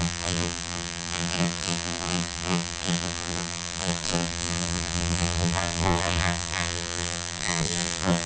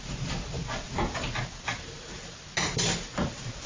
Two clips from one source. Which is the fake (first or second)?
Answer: first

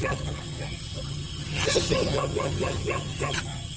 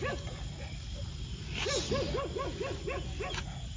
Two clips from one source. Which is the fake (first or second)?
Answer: first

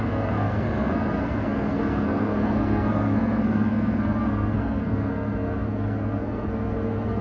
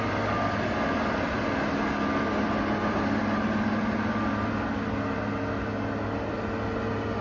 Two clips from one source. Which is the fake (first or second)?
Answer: first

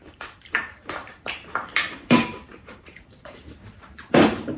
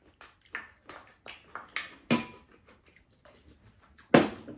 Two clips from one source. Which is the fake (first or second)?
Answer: first